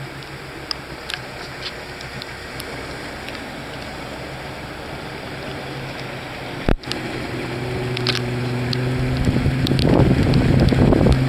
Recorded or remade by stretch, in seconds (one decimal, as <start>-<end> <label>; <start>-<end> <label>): 0.0-11.3 recorded